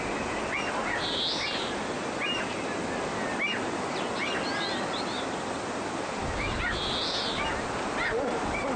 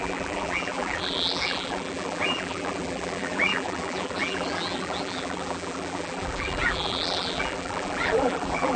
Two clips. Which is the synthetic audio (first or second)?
second